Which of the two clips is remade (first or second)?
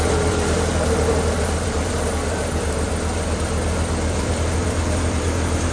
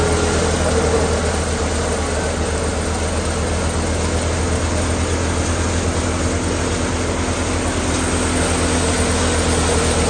first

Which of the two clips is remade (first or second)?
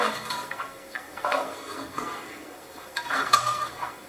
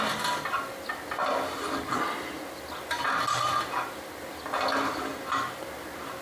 first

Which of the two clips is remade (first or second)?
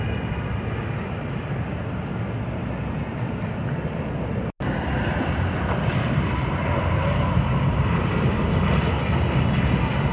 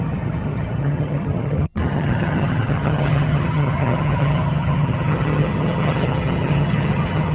second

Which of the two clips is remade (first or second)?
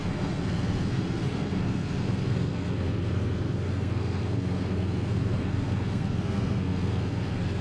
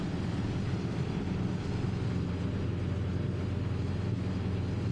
first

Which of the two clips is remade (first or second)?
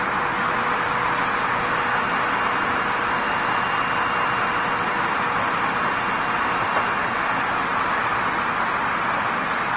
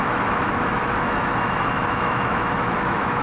second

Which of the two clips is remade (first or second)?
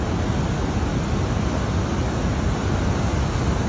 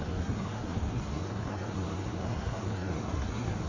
second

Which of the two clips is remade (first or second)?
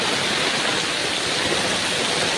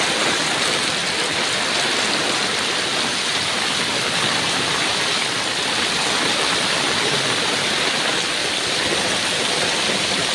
second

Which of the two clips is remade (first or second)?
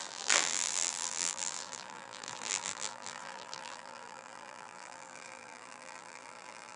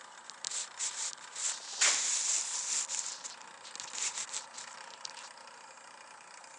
first